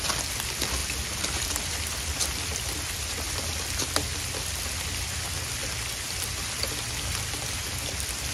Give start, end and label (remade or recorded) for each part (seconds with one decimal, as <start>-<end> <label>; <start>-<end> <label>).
0.0-0.8 recorded; 0.8-3.9 remade; 3.9-8.3 recorded